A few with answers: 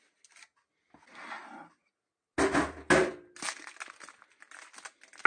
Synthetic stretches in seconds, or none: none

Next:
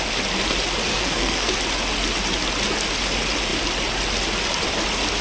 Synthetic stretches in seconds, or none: 0.9-1.5 (codec, SNAC)

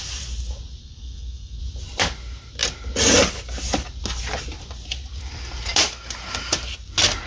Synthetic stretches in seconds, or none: 0.8-1.6 (codec, SNAC)

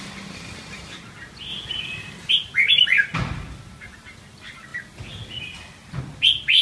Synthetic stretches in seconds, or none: 0.0-1.5 (vocoder, BigVGAN v2); 2.3-4.7; 6.0-6.6

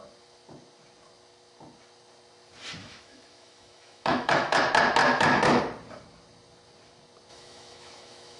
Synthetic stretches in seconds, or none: 2.8-4.6 (autoencoder, DAC-VAE); 5.0-5.6; 7.3-8.4